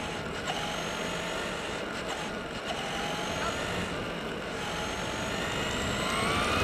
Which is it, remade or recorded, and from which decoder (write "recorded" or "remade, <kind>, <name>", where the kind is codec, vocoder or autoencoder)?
recorded